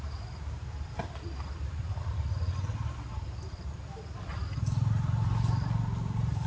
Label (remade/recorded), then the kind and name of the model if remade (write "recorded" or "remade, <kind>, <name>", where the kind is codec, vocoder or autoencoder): recorded